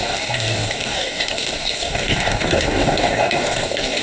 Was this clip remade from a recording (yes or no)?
yes